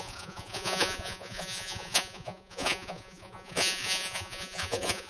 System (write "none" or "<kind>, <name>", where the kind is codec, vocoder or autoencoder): vocoder, Vocos